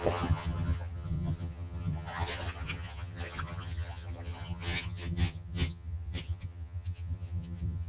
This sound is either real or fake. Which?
fake